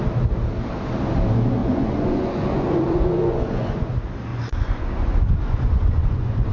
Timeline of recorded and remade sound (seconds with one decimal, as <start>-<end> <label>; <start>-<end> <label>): 0.0-1.6 recorded; 1.6-3.9 remade; 3.9-4.3 recorded; 4.3-6.5 remade